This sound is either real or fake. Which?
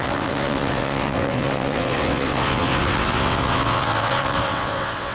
fake